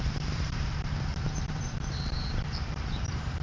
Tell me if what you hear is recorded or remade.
remade